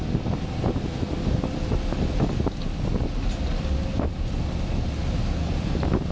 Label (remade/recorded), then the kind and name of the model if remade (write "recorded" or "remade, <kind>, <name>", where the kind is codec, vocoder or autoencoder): recorded